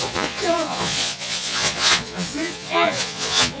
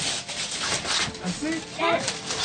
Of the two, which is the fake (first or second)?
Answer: first